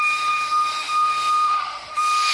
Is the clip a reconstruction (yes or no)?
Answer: yes